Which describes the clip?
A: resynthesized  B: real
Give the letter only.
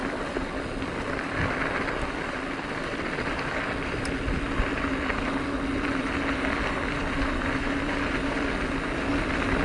B